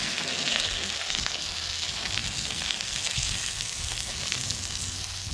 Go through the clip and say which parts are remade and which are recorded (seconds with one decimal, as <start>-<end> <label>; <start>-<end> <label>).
0.0-5.3 remade